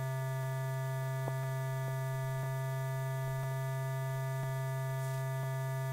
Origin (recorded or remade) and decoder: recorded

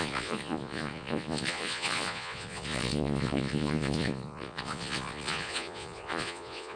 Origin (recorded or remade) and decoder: remade, vocoder, Vocos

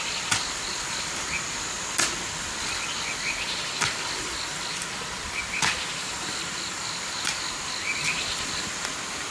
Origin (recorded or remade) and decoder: recorded